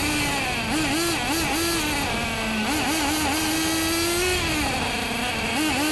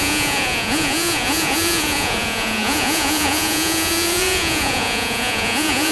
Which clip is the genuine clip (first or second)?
first